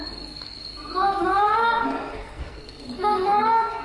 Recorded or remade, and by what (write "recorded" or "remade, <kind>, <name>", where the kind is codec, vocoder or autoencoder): remade, codec, SNAC